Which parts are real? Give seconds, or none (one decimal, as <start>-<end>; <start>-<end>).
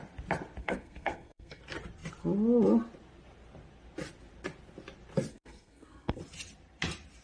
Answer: 0.0-0.6; 1.6-5.3; 6.2-7.2